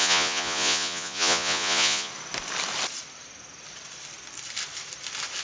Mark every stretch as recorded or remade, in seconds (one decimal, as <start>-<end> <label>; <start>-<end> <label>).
0.0-2.1 remade; 2.1-5.4 recorded